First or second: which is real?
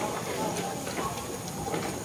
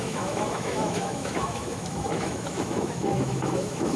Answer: first